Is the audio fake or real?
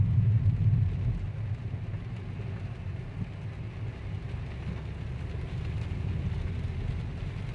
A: real